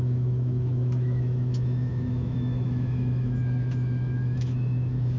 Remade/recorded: remade